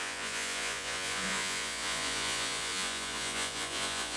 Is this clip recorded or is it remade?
remade